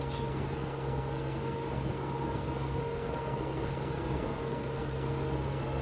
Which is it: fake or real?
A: fake